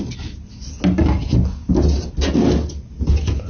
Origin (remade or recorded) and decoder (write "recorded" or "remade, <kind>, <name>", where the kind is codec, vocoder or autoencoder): recorded